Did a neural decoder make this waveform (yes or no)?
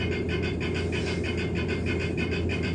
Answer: no